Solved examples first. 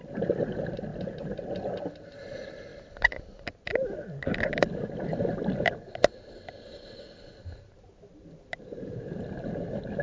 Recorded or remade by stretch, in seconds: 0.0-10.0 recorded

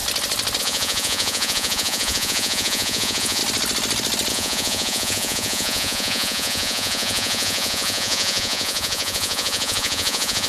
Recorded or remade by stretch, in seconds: 0.0-0.6 recorded; 0.6-3.4 remade; 3.4-4.3 recorded; 4.3-10.5 remade